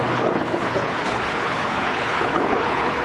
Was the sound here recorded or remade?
remade